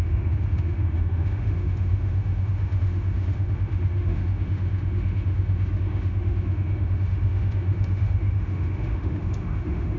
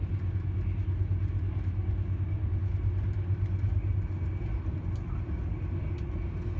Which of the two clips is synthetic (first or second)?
first